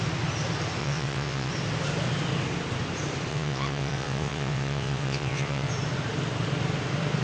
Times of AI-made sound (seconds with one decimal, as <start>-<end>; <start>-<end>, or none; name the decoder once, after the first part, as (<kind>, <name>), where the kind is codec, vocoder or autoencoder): 0.8-1.5 (vocoder, WaveNeXt); 3.3-5.7